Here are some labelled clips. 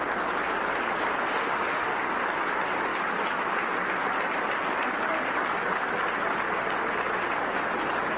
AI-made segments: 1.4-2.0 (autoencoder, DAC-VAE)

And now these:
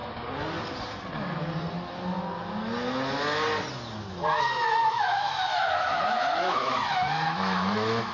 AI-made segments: 4.4-8.1 (autoencoder, DAC-VAE)

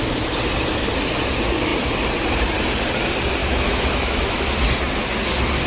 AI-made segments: 3.4-4.7 (autoencoder, DAC-VAE)

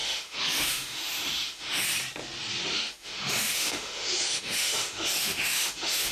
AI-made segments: 0.0-1.8 (autoencoder, DAC-VAE); 2.7-6.1

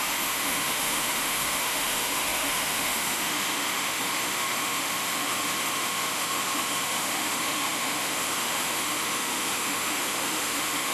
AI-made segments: 0.0-10.9 (autoencoder, DAC-VAE)